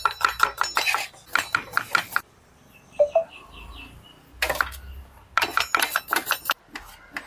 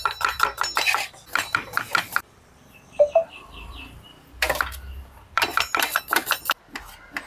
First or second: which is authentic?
first